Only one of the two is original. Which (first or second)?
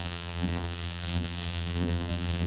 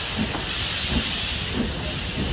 second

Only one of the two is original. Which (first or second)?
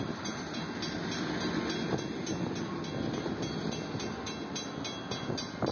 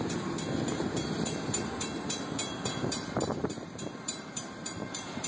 first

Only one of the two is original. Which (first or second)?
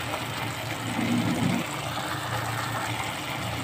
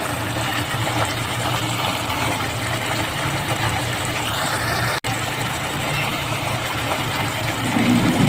first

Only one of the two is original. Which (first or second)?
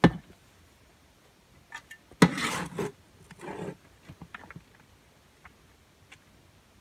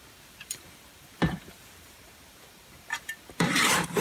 first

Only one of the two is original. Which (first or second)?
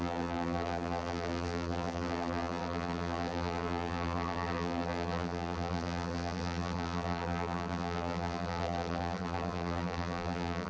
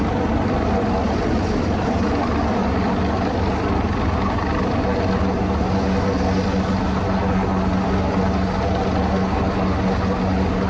second